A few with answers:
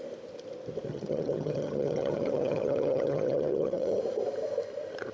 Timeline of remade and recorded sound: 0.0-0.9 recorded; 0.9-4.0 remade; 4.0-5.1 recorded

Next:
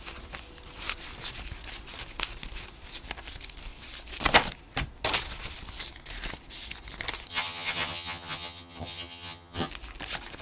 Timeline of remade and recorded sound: 0.0-7.3 recorded; 7.3-9.7 remade; 9.7-10.4 recorded

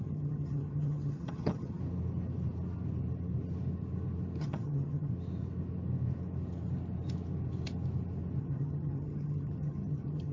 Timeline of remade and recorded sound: 0.0-1.8 remade; 1.8-4.4 recorded; 4.4-5.1 remade; 5.1-8.4 recorded; 8.4-10.3 remade

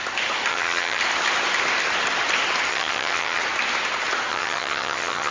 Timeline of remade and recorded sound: 0.0-0.5 recorded; 0.5-1.0 remade; 1.0-2.7 recorded; 2.7-3.4 remade; 3.4-4.3 recorded; 4.3-5.3 remade

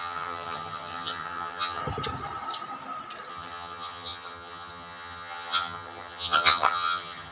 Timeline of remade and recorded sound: 0.0-1.8 remade; 1.8-3.3 recorded; 3.3-7.3 remade

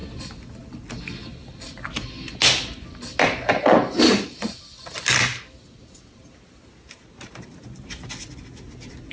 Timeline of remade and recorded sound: 0.0-9.1 recorded

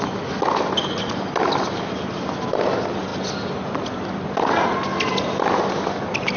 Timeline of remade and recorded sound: 0.0-6.4 recorded

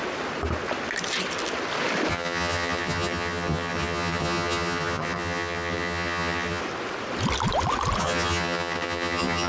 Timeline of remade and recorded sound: 0.0-2.1 recorded; 2.1-6.6 remade; 6.6-8.0 recorded; 8.0-9.5 remade